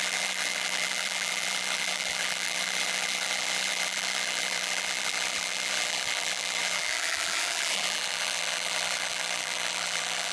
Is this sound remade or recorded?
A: remade